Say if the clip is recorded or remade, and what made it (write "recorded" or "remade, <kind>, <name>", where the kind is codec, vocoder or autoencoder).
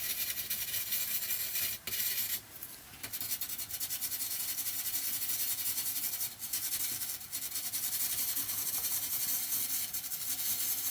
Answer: recorded